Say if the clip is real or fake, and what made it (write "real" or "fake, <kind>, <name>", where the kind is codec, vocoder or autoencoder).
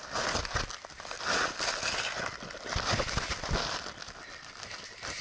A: real